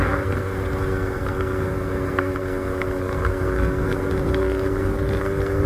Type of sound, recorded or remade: remade